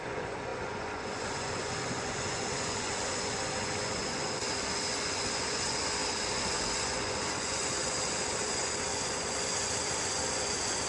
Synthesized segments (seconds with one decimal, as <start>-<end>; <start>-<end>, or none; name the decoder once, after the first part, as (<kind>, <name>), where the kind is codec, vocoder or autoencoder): 0.0-10.9 (vocoder, Vocos)